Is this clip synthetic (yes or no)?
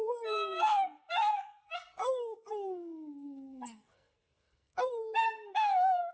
yes